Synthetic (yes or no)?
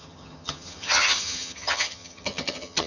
yes